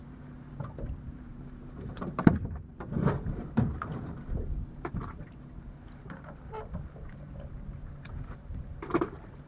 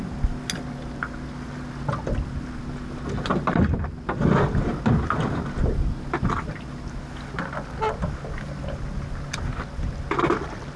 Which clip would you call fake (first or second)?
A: first